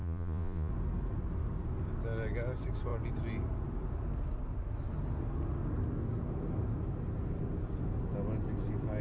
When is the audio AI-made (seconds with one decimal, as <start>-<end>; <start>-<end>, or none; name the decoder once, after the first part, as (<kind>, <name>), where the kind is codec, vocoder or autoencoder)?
0.0-0.7 (vocoder, Vocos)